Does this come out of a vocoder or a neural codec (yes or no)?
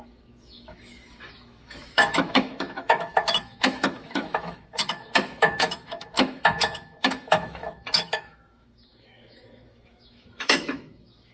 yes